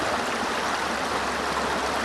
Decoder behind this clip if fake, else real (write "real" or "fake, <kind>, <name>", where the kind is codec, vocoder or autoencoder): real